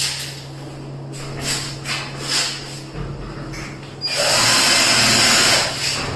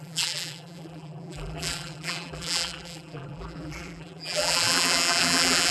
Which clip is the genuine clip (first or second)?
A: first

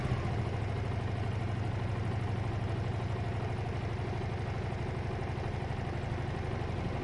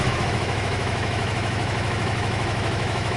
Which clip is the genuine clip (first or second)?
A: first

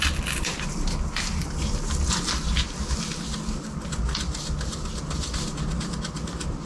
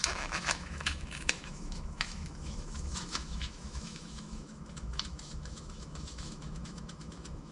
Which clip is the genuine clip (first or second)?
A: first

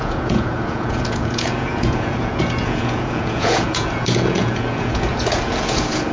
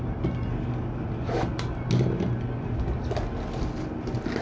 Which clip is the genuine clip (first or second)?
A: second